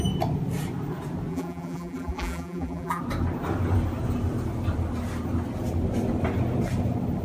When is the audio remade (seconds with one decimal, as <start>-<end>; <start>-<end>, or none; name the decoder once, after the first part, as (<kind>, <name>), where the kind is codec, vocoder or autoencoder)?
1.3-3.0 (vocoder, BigVGAN v2)